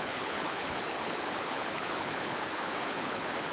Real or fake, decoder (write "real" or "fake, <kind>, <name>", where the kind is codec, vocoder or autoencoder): fake, codec, HILCodec